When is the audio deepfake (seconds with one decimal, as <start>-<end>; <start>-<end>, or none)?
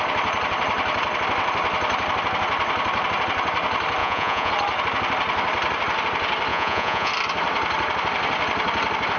4.0-4.5; 6.5-7.1